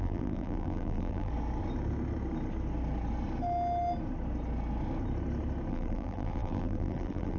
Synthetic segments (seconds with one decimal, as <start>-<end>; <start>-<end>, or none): 0.0-1.3; 5.7-7.4